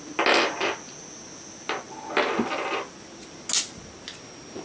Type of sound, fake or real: real